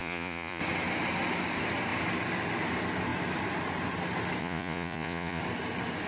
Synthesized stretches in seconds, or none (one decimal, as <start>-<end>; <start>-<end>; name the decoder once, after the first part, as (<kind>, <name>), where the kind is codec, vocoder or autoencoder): 0.0-0.6 (vocoder, Vocos); 4.4-5.4